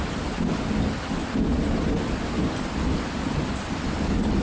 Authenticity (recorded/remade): recorded